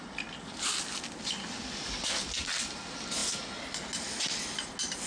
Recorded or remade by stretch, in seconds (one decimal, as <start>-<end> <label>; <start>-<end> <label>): 0.0-5.1 recorded